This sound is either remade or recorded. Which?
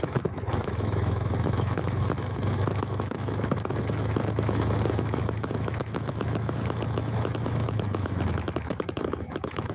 remade